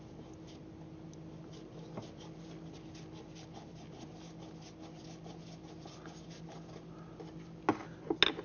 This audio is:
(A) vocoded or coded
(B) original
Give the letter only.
B